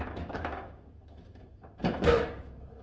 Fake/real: fake